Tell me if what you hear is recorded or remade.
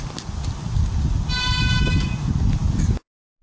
recorded